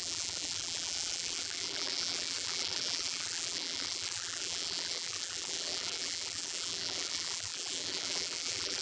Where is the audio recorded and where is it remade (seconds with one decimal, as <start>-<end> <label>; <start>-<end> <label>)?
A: 0.0-8.8 remade